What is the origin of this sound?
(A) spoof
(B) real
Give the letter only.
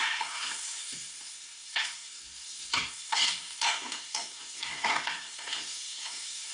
A